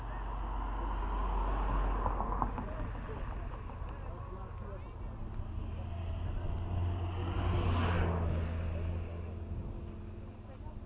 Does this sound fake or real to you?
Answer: real